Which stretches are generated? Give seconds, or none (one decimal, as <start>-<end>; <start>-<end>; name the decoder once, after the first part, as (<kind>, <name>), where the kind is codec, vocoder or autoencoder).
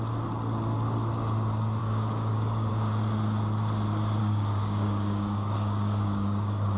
1.8-2.7 (codec, DAC); 4.2-6.8